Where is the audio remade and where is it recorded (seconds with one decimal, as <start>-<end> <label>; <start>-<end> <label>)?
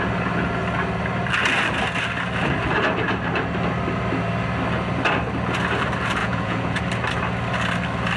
0.0-6.2 recorded; 6.2-6.8 remade; 6.8-8.2 recorded